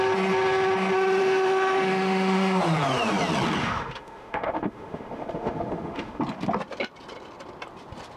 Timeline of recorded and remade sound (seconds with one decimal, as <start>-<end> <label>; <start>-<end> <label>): 0.0-1.2 recorded; 1.2-2.6 remade; 2.6-3.6 recorded; 3.6-6.2 remade; 6.2-8.2 recorded